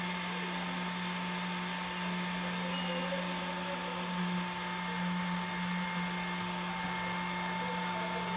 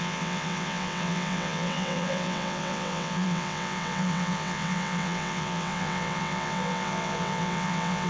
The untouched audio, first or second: first